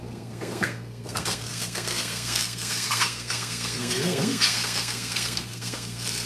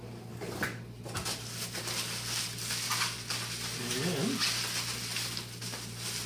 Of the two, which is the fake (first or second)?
first